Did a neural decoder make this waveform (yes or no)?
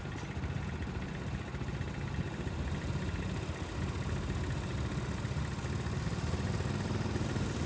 no